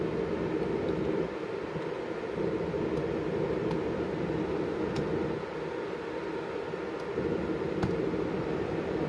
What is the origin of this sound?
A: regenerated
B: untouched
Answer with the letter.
B